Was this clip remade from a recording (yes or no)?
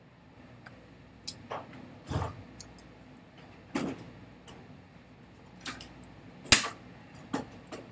no